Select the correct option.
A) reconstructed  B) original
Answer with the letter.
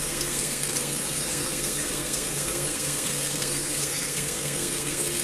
A